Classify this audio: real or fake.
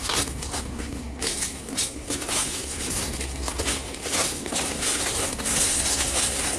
fake